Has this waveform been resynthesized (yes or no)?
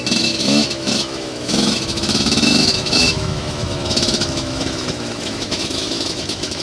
yes